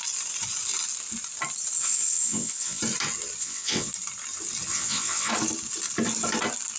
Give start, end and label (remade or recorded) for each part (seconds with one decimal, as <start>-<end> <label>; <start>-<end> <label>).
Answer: 0.0-1.8 recorded; 1.8-2.8 remade; 2.8-3.4 recorded; 3.4-3.9 remade; 3.9-4.7 recorded; 4.7-5.3 remade; 5.3-6.8 recorded